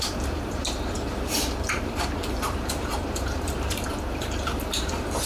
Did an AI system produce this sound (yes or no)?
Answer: yes